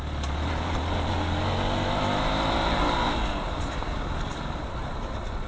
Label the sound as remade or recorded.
recorded